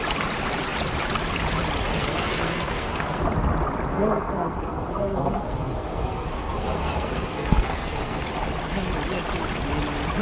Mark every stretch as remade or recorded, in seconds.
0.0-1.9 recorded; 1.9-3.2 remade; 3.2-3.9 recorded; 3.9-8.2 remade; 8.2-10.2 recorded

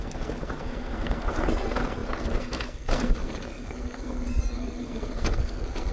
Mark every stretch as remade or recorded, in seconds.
0.0-5.9 remade